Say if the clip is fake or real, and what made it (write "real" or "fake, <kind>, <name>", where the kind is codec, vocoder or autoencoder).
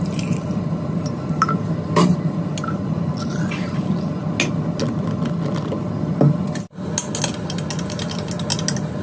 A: real